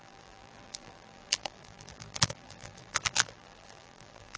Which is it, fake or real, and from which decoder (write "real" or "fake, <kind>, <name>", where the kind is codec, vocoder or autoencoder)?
fake, vocoder, BigVGAN v2